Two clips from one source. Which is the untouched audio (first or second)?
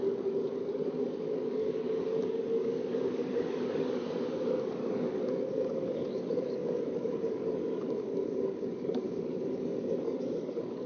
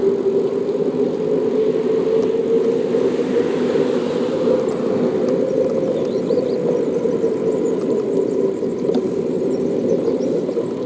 second